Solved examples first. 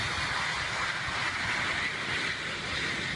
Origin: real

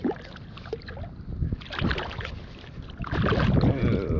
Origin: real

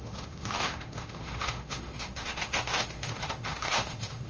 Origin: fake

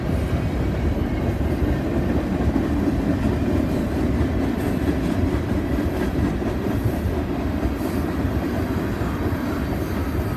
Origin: real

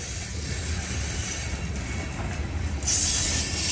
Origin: real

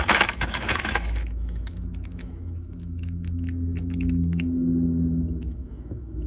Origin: fake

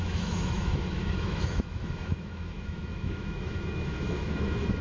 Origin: fake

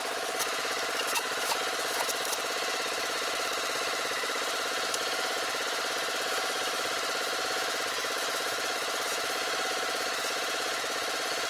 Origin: fake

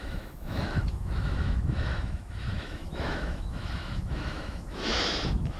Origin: fake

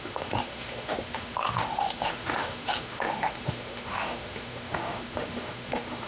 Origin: fake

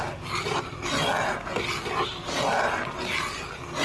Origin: real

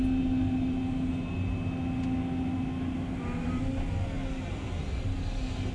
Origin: real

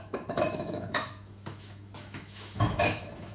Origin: fake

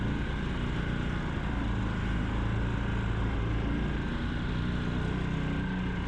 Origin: real